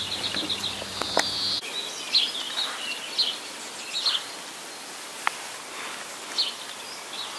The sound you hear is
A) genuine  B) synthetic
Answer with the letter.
A